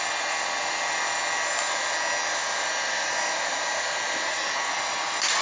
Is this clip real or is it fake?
real